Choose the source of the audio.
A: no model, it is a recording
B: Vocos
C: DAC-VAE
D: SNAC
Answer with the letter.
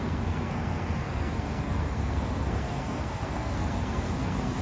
D